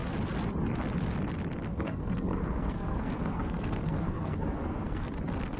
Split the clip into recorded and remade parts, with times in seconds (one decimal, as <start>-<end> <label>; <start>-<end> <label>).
0.0-1.7 recorded; 1.7-5.1 remade; 5.1-5.6 recorded